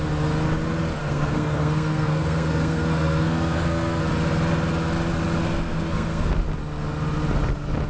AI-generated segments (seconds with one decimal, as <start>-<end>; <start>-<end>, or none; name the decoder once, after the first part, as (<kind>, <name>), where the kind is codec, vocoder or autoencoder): 1.0-4.0 (codec, SNAC); 5.4-6.3